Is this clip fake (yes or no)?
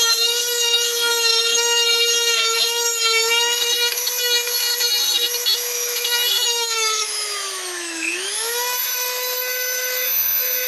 yes